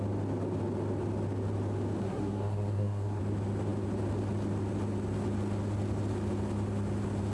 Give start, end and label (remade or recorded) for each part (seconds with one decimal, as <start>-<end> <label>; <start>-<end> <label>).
0.0-2.0 recorded; 2.0-3.2 remade; 3.2-7.3 recorded